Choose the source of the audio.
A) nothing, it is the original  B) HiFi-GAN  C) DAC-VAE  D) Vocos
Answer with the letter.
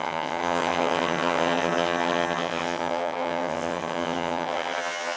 B